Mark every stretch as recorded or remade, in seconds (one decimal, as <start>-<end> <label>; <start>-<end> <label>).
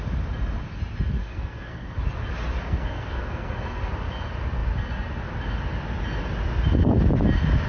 0.0-1.2 recorded; 1.2-2.0 remade; 2.0-2.6 recorded; 2.6-3.9 remade; 3.9-7.7 recorded